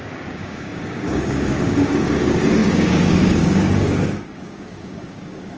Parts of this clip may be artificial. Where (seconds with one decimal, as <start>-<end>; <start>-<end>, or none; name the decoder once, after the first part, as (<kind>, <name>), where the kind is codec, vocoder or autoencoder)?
0.0-5.6 (codec, DAC)